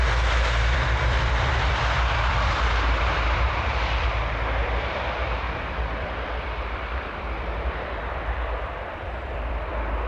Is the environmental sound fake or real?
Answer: fake